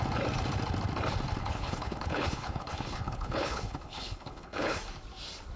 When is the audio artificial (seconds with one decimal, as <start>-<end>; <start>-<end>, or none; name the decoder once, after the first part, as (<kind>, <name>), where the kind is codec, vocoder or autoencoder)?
1.4-4.8 (codec, HILCodec)